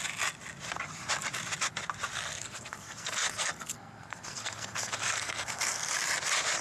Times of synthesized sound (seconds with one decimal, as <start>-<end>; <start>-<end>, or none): 2.2-5.9